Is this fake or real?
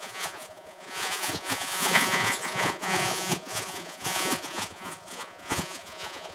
fake